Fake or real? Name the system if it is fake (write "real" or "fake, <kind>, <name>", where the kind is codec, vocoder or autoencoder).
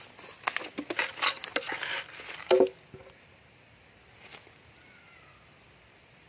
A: real